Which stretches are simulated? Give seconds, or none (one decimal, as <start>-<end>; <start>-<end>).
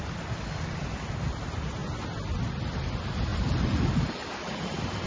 3.3-5.1